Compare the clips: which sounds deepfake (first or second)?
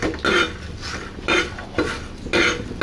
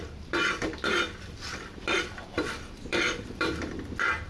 second